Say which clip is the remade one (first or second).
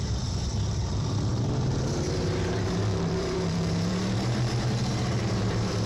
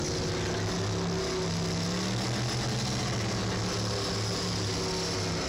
first